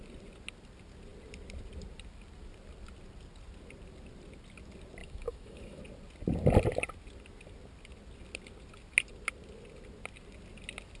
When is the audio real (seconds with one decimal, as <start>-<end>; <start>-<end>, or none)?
0.0-5.0; 5.8-11.0